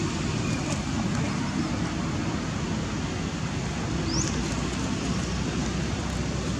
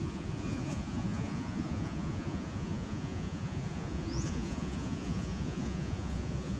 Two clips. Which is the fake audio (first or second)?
second